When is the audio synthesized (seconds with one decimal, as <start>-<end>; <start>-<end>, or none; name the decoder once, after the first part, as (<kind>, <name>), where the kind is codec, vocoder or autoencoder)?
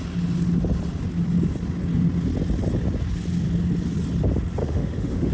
4.6-5.3 (autoencoder, DAC-VAE)